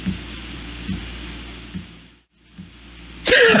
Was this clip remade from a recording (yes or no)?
no